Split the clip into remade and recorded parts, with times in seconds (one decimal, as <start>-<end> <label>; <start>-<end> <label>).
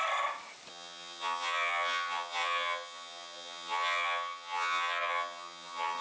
0.0-0.7 recorded; 0.7-6.0 remade